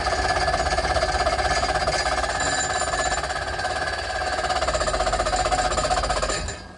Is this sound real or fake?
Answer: real